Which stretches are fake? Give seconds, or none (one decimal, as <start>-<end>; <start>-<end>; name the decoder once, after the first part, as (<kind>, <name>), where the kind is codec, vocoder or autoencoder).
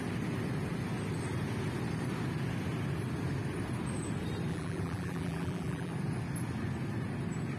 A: 4.5-5.9 (vocoder, BigVGAN v2)